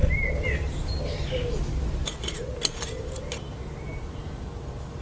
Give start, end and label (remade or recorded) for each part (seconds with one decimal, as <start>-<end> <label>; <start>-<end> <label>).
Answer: 0.0-5.0 recorded